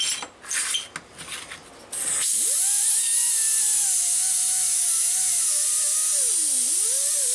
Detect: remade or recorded recorded